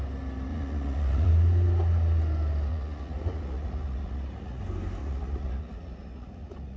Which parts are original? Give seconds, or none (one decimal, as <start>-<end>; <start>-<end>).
0.0-0.5; 1.3-2.7; 4.6-5.0

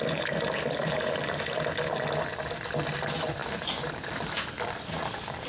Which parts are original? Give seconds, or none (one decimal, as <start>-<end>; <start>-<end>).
0.0-3.4; 4.3-5.5